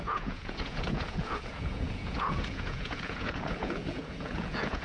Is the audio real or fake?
fake